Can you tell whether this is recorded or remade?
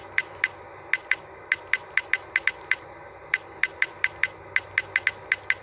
recorded